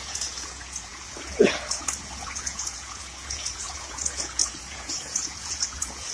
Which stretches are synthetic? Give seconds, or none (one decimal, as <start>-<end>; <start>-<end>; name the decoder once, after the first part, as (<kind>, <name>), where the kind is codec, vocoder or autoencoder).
0.0-6.1 (vocoder, Vocos)